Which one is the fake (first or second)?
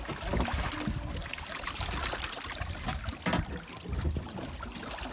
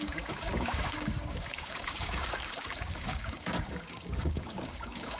second